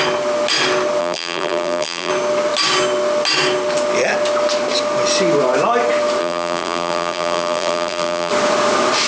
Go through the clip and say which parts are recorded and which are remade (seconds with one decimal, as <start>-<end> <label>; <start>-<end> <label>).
0.0-1.0 recorded; 1.0-2.1 remade; 2.1-6.2 recorded; 6.2-8.3 remade; 8.3-9.1 recorded